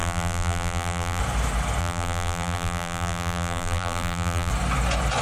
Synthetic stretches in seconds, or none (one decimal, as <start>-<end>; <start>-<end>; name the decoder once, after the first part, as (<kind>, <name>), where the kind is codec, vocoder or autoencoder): 0.0-1.2 (vocoder, BigVGAN v2); 1.8-4.5